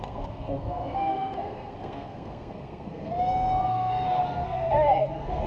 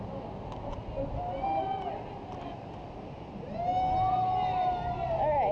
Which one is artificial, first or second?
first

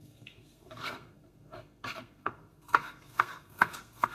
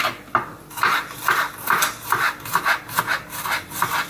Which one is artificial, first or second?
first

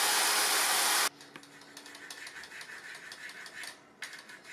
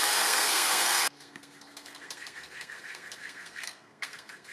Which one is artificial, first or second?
second